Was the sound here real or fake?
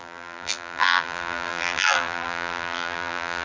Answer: fake